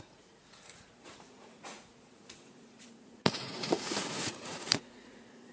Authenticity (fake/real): fake